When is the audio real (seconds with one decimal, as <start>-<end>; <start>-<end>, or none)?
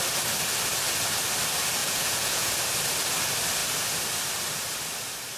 0.0-1.8; 2.6-5.4